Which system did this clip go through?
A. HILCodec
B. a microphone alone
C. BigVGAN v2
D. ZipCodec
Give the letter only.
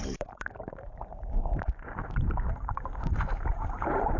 C